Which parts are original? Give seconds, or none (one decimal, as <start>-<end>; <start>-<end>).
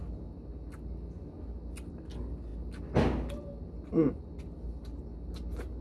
0.0-5.8